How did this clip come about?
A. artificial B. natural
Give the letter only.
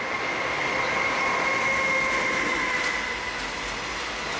B